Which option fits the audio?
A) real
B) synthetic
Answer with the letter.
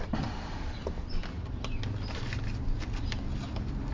A